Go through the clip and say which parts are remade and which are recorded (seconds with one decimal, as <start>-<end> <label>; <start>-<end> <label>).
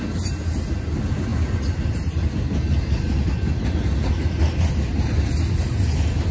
0.0-6.3 recorded